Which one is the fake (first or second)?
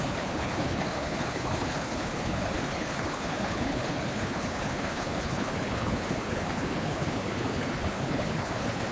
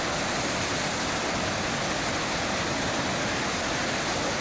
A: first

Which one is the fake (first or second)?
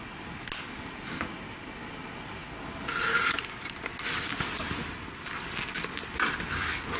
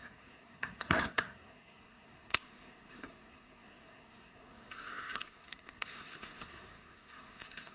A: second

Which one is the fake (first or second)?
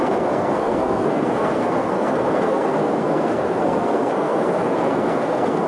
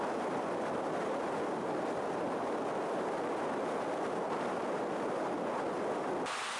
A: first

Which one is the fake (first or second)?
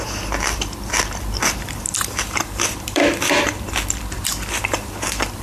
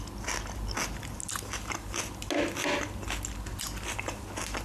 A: first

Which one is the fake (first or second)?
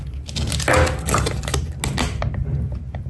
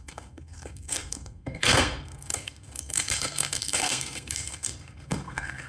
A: second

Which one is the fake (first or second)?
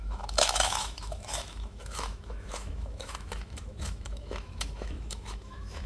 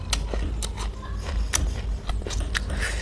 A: first